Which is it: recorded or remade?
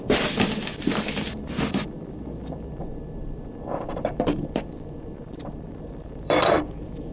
remade